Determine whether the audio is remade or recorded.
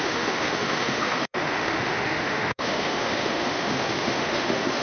remade